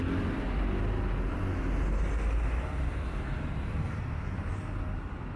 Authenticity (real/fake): real